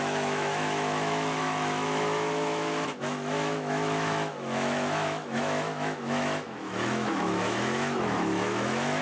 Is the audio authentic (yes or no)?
no